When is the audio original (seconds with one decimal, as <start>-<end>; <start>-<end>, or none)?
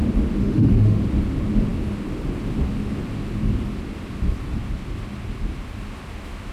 0.0-0.4; 1.0-6.5